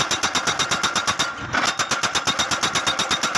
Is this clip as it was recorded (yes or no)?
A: yes